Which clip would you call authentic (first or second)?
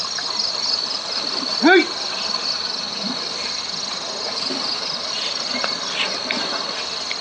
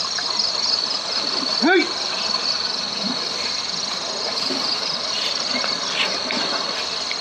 first